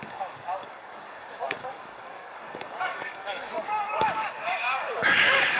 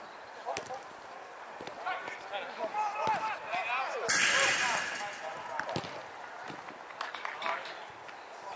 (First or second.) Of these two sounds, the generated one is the first